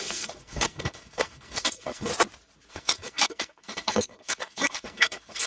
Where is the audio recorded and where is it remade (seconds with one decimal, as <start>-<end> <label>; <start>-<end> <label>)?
0.0-2.1 remade; 2.1-2.7 recorded; 2.7-5.5 remade